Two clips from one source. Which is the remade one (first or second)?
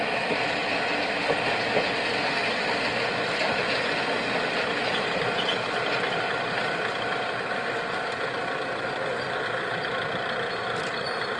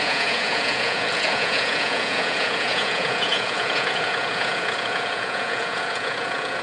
second